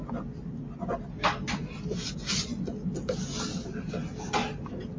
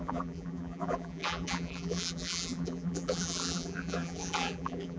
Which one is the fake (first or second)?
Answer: second